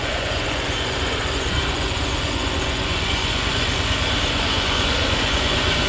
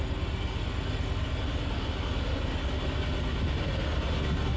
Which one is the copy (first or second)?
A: first